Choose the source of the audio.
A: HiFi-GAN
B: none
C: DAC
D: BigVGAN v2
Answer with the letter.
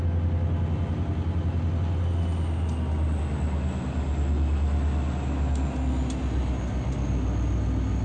B